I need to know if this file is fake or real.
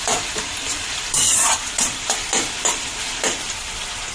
fake